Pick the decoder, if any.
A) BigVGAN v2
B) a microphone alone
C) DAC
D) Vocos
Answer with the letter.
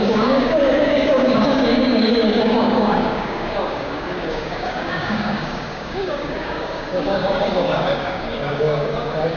C